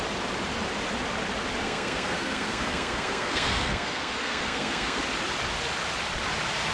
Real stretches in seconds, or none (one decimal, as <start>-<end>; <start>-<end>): 0.0-1.6; 5.0-6.7